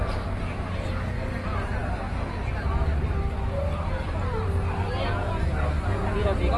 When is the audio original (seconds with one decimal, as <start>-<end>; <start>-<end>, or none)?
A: 0.0-6.6